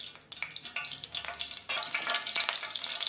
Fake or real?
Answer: real